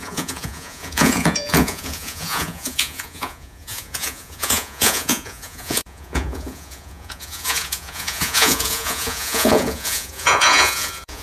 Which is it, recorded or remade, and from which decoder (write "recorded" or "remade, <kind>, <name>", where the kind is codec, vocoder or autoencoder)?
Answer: remade, vocoder, Vocos